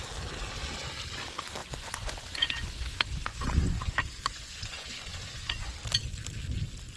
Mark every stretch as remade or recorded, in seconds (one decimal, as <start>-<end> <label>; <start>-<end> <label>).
0.0-1.6 recorded; 1.6-5.7 remade; 5.7-7.0 recorded